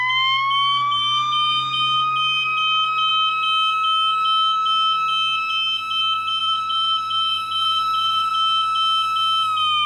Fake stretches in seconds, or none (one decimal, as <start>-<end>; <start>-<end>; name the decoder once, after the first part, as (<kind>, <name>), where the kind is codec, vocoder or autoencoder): 6.4-8.3 (vocoder, BigVGAN v2)